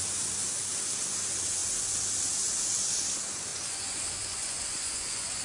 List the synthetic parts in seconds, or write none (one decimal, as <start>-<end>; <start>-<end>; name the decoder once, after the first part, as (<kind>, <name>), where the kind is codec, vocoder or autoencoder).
3.5-5.4 (vocoder, Vocos)